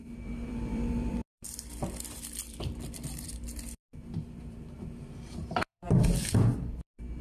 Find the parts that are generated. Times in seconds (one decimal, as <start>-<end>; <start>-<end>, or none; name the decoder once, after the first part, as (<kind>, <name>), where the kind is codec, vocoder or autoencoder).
0.0-7.2 (vocoder, BigVGAN v2)